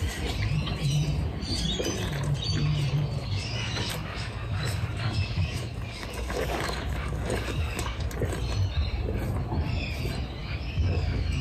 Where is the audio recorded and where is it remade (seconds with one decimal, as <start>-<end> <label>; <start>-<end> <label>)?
0.0-3.2 recorded; 3.2-8.1 remade; 8.1-10.4 recorded; 10.4-11.4 remade

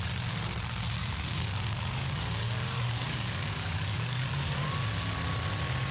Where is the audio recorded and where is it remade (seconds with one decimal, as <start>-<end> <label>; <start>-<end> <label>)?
0.0-1.0 recorded; 1.0-4.5 remade; 4.5-5.9 recorded